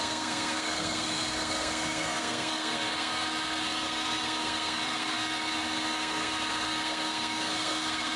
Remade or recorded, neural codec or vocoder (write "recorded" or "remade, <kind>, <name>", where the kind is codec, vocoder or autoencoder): remade, codec, SNAC